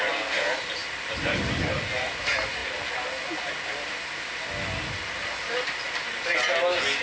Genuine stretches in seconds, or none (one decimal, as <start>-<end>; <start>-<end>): 0.0-7.0